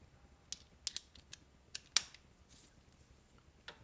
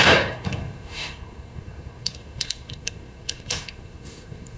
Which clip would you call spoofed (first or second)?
second